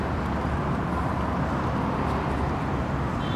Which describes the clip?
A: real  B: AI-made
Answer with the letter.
A